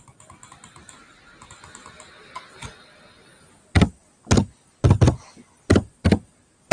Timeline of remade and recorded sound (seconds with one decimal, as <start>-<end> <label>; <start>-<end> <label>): 0.0-6.7 recorded